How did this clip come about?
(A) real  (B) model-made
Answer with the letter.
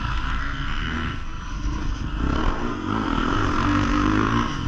B